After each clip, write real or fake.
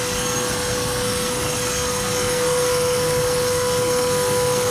fake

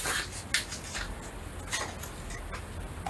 real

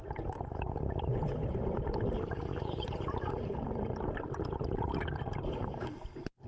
real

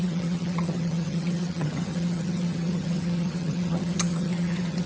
fake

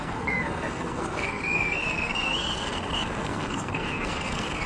fake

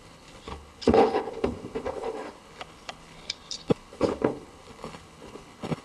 fake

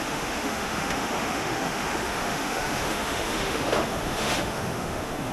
fake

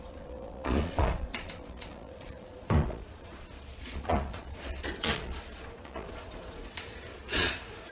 fake